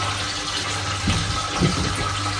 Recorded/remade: recorded